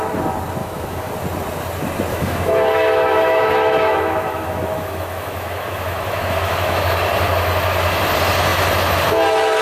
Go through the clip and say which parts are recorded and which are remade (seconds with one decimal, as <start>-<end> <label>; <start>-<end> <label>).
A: 0.0-0.6 recorded; 0.6-1.1 remade; 1.1-2.1 recorded; 2.1-6.8 remade; 6.8-9.6 recorded

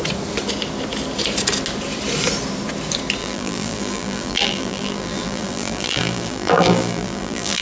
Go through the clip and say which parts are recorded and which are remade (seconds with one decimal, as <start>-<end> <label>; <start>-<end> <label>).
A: 0.0-3.2 recorded; 3.2-7.6 remade

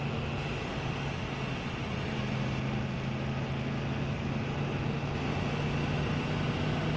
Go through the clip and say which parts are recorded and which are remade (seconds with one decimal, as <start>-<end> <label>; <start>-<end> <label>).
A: 0.0-7.0 recorded